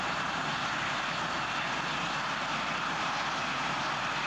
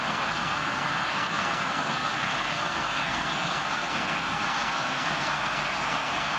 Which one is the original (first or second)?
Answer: first